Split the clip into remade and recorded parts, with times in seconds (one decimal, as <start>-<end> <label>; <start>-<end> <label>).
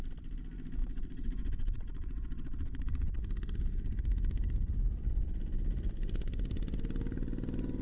0.0-0.8 recorded; 0.8-3.2 remade; 3.2-7.8 recorded